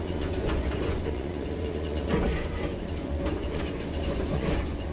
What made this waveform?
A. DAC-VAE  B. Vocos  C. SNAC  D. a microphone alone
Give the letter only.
B